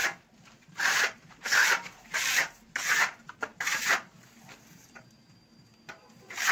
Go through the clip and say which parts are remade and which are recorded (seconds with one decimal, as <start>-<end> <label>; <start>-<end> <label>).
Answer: 0.0-6.5 remade